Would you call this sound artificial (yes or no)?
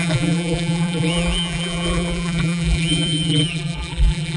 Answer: yes